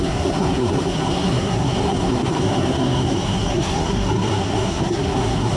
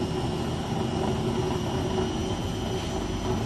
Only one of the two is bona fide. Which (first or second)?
second